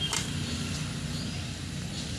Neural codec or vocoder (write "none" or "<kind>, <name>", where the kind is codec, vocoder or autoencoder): none